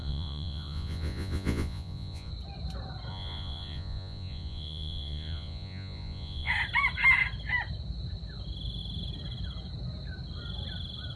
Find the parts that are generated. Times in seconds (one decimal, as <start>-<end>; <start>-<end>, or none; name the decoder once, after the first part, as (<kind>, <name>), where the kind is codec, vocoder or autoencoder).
0.0-2.3 (vocoder, Vocos); 3.1-6.5